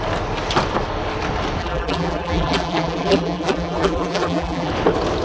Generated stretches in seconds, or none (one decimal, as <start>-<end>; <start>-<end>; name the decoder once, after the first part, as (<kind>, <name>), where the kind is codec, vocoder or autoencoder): 1.6-4.7 (vocoder, BigVGAN v2)